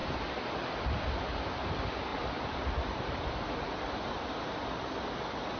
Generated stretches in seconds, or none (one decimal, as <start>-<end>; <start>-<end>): none